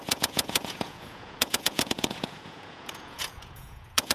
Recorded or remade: remade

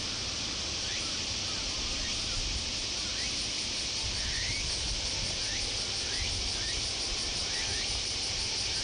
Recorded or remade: recorded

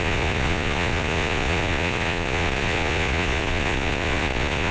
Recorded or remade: remade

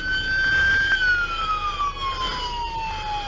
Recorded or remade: recorded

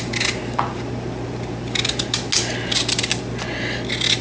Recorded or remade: recorded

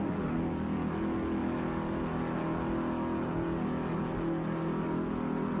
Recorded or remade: recorded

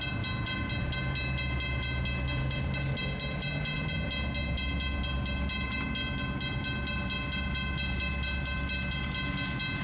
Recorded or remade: recorded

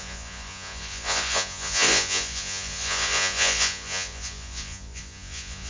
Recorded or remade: remade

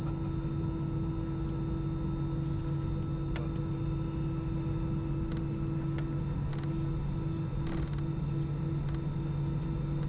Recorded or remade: recorded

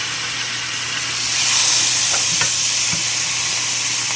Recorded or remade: recorded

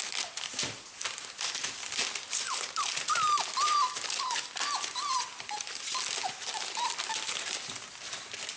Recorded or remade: recorded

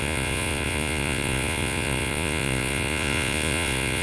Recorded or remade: remade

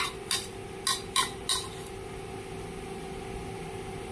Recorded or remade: recorded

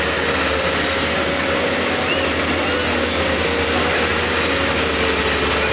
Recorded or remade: recorded